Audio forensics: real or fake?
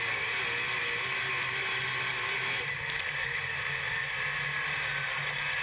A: real